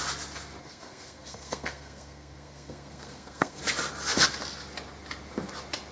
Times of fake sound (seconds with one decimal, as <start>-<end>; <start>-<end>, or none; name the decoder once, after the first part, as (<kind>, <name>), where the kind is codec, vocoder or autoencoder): 0.6-3.6 (codec, SNAC)